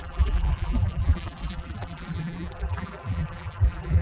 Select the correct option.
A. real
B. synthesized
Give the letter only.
B